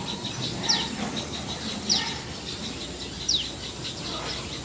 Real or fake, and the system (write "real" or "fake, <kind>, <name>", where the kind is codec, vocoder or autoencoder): real